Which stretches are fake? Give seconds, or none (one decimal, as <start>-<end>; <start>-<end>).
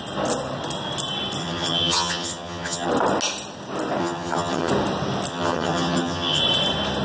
1.4-2.9; 4.0-4.7; 5.3-6.4